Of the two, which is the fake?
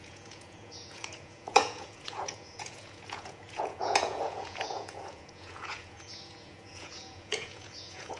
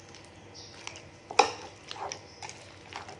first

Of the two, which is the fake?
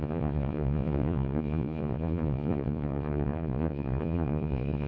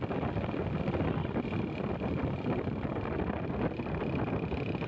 first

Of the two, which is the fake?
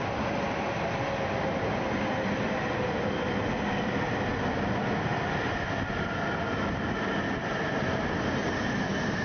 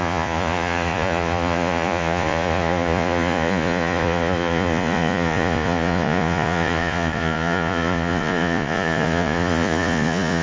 second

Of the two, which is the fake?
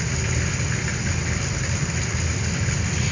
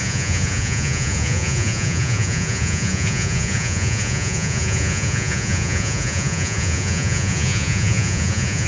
second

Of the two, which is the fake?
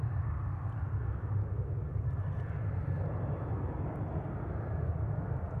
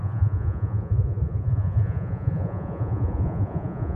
second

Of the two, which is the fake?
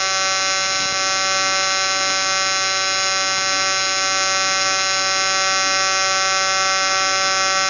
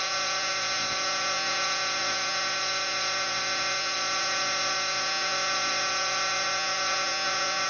second